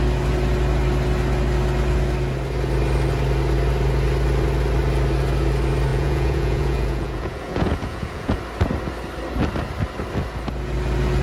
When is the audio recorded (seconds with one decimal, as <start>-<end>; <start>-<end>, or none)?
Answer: 0.0-5.9; 8.4-11.2